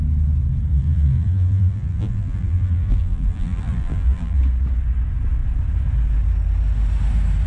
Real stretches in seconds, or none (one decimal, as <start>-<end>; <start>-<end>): 0.0-0.7; 4.4-7.5